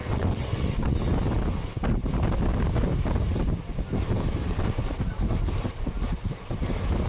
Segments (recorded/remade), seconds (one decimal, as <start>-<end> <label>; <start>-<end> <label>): 0.0-1.0 remade; 1.0-4.4 recorded; 4.4-5.0 remade; 5.0-7.1 recorded